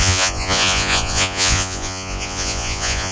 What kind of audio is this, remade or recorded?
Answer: remade